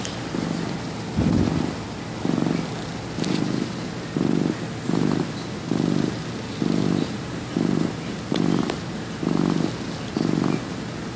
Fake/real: real